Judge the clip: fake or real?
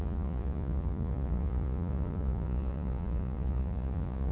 fake